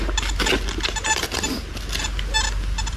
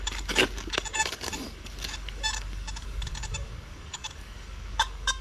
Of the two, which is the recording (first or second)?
first